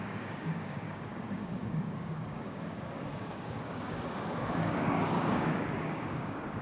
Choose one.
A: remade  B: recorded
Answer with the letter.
A